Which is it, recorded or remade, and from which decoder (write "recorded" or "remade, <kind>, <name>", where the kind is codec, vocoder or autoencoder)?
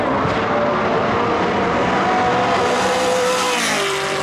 recorded